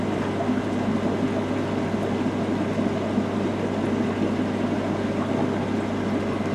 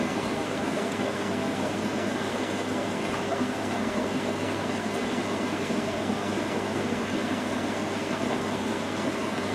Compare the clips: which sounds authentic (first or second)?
first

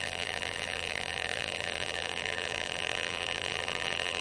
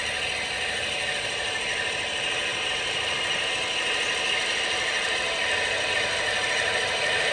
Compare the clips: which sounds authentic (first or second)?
second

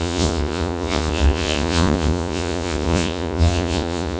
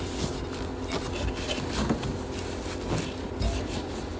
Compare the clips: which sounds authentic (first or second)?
second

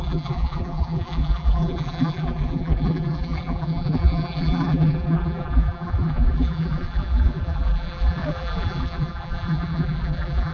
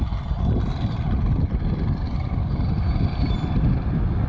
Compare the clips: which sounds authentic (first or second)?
second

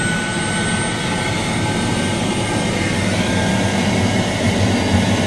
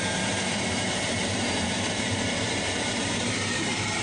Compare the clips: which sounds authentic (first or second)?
first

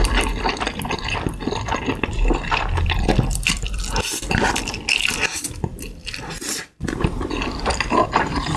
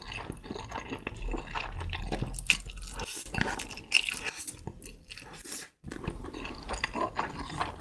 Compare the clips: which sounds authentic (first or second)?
second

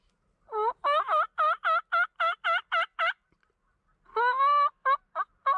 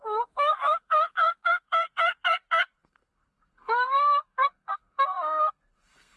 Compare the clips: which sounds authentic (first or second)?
first